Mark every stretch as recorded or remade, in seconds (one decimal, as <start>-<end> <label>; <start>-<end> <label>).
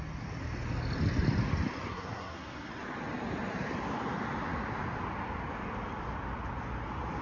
0.0-1.9 recorded; 1.9-2.7 remade; 2.7-7.2 recorded